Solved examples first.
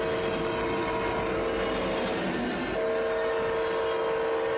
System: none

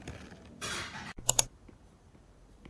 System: vocoder, BigVGAN v2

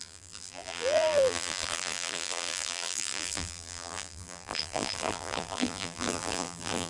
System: vocoder, BigVGAN v2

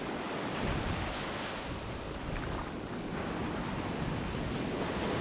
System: none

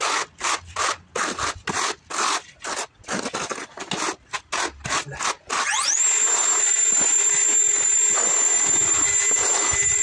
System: none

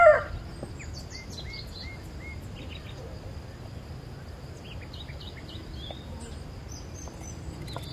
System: none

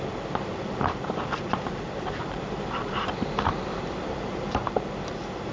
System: vocoder, BigVGAN v2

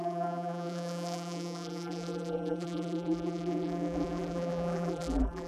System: vocoder, BigVGAN v2